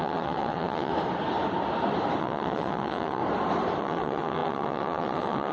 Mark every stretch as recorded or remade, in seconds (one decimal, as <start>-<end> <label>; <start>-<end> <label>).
0.0-0.9 remade; 0.9-2.2 recorded; 2.2-3.2 remade; 3.2-3.8 recorded; 3.8-5.5 remade